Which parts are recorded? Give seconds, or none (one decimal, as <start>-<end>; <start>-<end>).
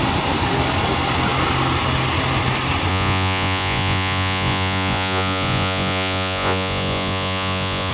0.0-2.9